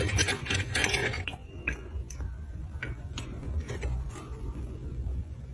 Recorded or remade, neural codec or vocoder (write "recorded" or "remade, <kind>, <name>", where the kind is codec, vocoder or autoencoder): remade, vocoder, Vocos